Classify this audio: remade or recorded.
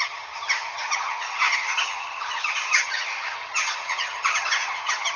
remade